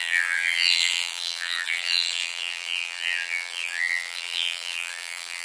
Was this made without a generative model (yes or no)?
no